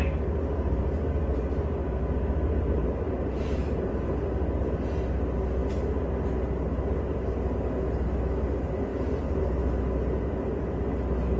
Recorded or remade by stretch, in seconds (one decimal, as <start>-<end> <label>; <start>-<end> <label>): 0.0-2.8 recorded; 2.8-3.9 remade; 3.9-8.9 recorded; 8.9-9.4 remade; 9.4-11.4 recorded